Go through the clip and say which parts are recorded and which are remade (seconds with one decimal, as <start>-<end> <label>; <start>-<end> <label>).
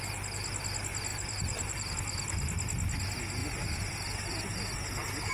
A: 0.0-1.1 recorded; 1.1-1.9 remade; 1.9-5.3 recorded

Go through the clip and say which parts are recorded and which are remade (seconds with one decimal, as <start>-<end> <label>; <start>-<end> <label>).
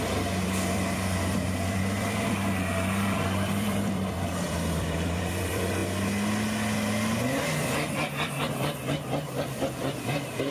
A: 0.0-5.8 remade; 5.8-10.1 recorded; 10.1-10.5 remade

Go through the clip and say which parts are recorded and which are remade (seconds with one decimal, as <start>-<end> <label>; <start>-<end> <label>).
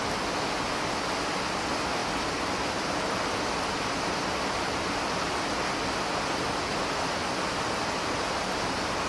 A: 0.0-9.1 recorded